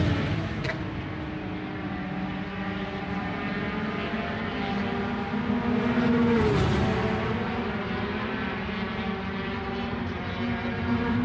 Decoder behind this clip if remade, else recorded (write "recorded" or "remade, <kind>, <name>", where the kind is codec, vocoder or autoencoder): recorded